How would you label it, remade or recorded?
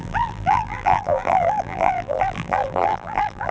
remade